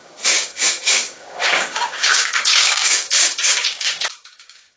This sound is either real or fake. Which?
fake